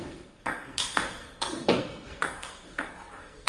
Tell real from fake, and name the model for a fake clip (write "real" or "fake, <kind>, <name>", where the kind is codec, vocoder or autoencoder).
fake, codec, SNAC